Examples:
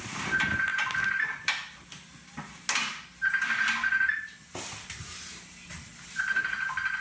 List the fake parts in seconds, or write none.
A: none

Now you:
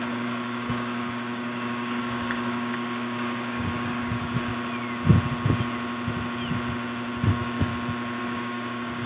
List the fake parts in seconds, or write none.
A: 0.0-4.5 (codec, DAC); 7.3-7.7; 8.2-9.1

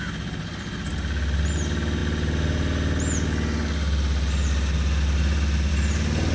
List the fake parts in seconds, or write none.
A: none

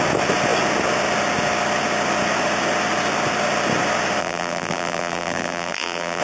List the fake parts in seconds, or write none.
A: 4.2-6.2 (vocoder, BigVGAN v2)

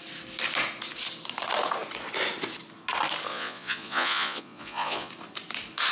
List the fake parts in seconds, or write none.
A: 3.3-5.1 (vocoder, Vocos)

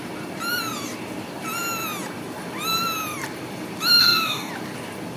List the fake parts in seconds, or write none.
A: 4.0-4.5 (codec, DAC)

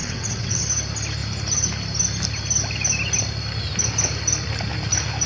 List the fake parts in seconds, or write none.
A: 0.0-0.6 (vocoder, WaveNeXt)